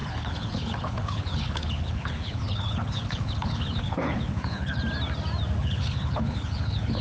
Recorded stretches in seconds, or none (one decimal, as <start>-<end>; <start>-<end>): 4.8-5.6